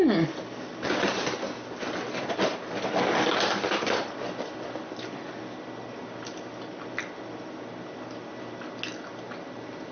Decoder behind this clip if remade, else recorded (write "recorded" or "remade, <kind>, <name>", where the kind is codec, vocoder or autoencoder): recorded